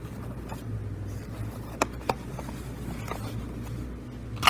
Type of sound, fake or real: real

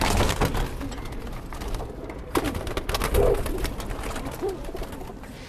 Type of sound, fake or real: real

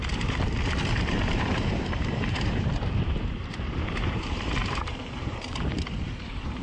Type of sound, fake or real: fake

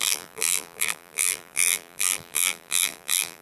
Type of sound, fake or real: fake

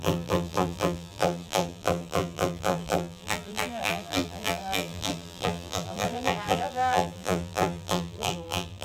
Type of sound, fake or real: fake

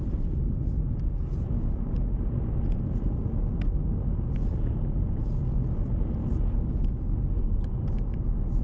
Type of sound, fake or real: real